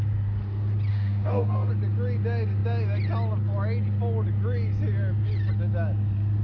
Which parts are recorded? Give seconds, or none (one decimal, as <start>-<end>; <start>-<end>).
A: 0.0-0.9; 1.7-6.4